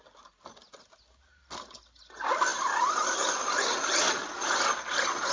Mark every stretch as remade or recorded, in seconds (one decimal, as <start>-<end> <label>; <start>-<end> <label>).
0.0-5.3 recorded